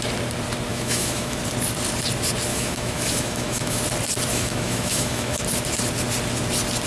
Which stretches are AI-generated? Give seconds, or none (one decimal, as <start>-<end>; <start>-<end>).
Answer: 0.7-1.4; 2.5-3.8; 4.3-5.4